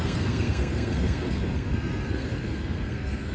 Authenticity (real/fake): fake